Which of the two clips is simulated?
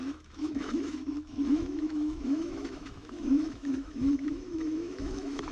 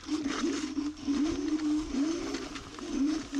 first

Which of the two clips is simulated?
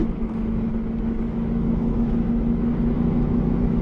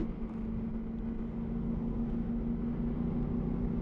first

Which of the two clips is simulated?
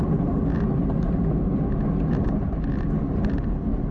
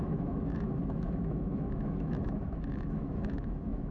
second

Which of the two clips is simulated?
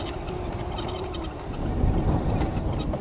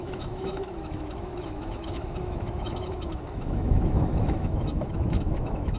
second